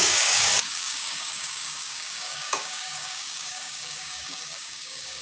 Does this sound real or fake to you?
fake